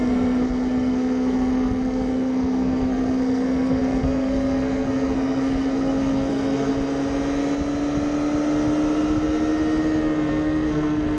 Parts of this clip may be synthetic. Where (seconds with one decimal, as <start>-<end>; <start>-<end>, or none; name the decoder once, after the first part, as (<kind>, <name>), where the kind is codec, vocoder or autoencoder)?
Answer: 0.0-6.7 (codec, SNAC); 10.3-11.2